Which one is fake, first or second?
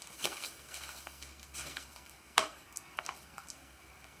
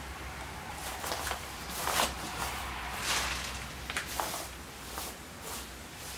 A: first